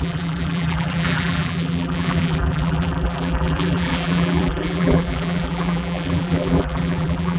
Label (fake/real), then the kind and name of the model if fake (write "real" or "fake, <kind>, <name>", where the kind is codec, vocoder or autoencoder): fake, vocoder, BigVGAN v2